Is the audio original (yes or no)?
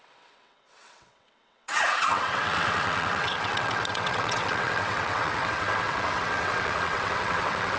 no